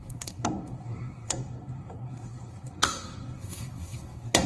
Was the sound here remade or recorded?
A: remade